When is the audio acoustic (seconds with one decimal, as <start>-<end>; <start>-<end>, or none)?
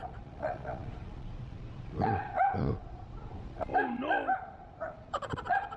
3.7-4.4